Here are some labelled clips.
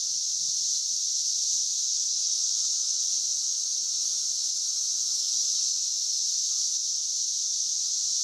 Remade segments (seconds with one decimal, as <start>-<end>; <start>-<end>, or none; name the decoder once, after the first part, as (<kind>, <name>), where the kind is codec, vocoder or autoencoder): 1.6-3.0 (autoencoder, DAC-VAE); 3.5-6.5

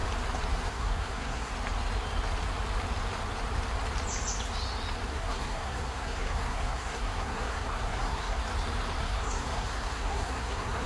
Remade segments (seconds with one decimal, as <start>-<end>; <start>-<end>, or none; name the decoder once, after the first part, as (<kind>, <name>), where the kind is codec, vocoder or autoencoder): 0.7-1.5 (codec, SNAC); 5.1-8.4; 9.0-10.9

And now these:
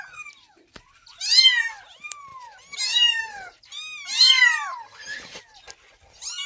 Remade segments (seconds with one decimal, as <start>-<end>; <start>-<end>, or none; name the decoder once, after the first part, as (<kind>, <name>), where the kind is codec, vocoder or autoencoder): 2.3-5.4 (vocoder, BigVGAN v2)

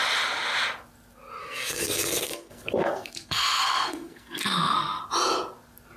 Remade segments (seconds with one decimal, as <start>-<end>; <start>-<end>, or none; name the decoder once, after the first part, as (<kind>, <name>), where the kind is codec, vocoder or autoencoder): 1.4-5.0 (codec, SNAC)

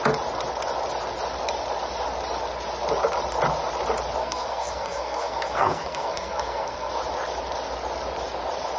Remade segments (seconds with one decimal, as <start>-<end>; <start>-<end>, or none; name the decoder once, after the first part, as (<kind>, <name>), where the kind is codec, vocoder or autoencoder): 4.2-6.9 (codec, SNAC)

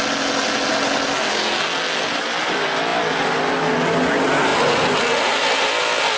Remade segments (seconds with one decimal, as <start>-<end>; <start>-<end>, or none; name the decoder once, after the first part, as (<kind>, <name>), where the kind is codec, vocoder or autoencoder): none